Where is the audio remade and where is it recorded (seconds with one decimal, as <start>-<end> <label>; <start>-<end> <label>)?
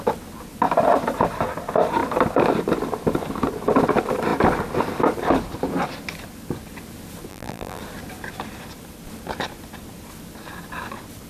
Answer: 0.0-7.3 recorded; 7.3-7.8 remade; 7.8-11.3 recorded